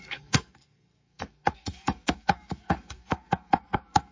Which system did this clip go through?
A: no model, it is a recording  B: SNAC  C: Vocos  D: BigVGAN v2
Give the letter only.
B